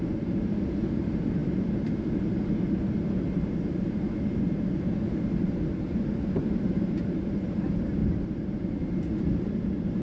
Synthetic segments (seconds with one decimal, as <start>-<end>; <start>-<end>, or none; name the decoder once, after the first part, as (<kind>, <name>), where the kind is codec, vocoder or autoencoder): 0.0-10.0 (vocoder, BigVGAN v2)